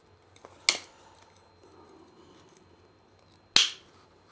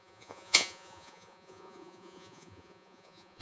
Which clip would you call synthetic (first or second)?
second